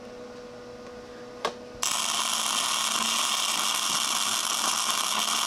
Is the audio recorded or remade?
recorded